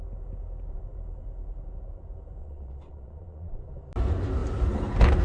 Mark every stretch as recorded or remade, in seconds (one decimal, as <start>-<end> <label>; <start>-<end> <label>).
0.0-2.4 recorded; 2.4-3.6 remade; 3.6-5.2 recorded